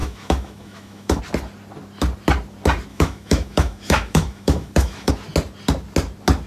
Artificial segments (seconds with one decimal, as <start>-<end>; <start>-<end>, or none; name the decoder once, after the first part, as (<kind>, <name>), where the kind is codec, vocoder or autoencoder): 0.0-1.2 (autoencoder, DAC-VAE); 2.9-5.1